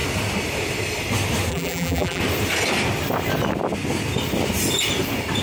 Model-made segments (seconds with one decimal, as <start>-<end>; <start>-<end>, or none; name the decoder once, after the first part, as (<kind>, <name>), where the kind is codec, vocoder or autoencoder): 1.5-2.2 (vocoder, BigVGAN v2)